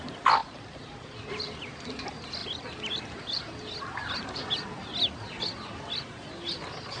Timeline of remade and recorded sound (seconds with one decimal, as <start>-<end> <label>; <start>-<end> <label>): 0.0-0.4 recorded; 0.4-1.3 remade; 1.3-2.4 recorded; 2.4-3.0 remade; 3.0-7.0 recorded